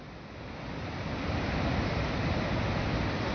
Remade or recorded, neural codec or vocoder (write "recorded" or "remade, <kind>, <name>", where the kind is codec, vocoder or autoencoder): recorded